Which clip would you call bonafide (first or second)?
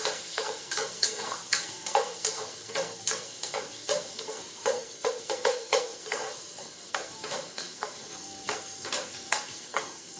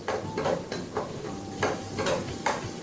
second